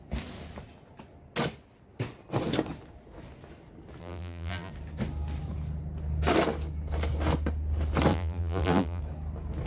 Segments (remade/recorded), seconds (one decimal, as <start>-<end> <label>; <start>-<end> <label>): 0.0-4.0 recorded; 4.0-4.7 remade; 4.7-8.1 recorded; 8.1-9.0 remade; 9.0-9.7 recorded